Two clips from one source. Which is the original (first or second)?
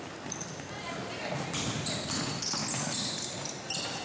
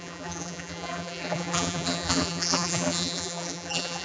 first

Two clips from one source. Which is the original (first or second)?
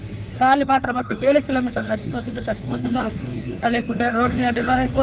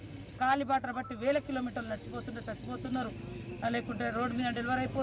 second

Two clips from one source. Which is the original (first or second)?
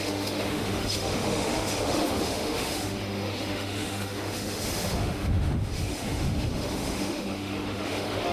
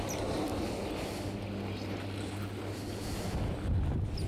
second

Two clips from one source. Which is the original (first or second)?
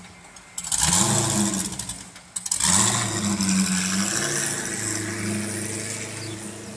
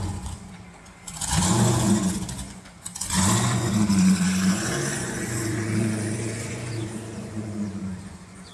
first